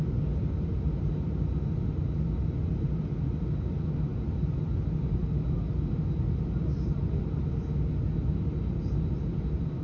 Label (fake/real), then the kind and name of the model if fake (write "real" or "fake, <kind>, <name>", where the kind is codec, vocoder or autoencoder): real